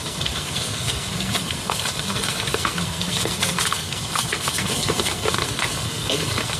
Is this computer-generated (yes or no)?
yes